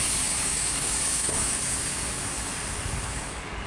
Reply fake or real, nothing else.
fake